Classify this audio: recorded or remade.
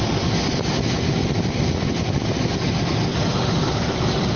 recorded